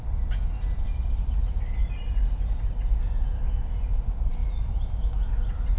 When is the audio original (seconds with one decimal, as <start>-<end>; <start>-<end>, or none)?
0.0-5.8